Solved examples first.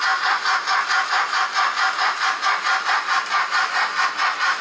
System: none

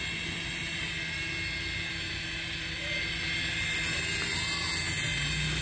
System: none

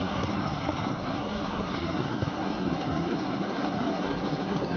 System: codec, SNAC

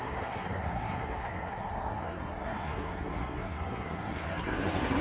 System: codec, SNAC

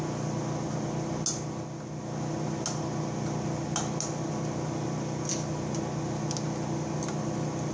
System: none